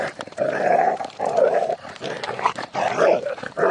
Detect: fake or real fake